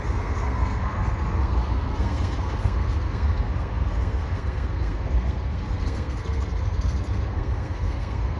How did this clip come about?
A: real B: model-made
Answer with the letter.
B